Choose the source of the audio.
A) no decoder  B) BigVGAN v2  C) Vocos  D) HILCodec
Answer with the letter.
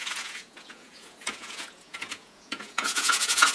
C